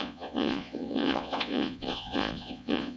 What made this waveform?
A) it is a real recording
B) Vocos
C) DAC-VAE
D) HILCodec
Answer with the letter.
B